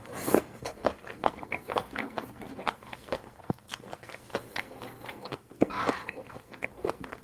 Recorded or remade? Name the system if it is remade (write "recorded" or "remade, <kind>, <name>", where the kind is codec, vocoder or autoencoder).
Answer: remade, codec, SNAC